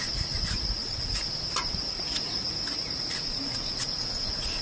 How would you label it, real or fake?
fake